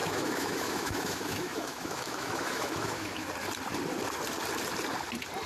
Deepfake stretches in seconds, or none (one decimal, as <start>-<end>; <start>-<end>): 0.0-3.3